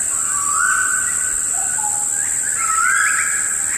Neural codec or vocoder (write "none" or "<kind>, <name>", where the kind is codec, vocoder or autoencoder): none